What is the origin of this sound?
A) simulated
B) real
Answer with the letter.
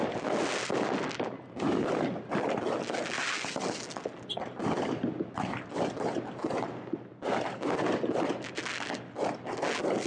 B